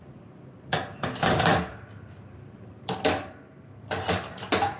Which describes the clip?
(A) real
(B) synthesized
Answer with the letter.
B